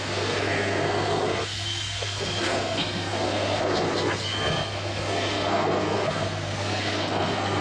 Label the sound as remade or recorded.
remade